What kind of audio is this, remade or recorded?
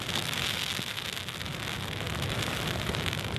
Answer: recorded